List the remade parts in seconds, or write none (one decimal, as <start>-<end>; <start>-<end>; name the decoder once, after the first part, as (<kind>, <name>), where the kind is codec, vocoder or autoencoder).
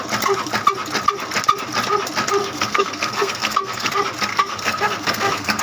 2.4-3.9 (codec, SNAC); 4.3-5.6